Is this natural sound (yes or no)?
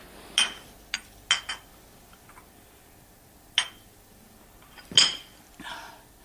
yes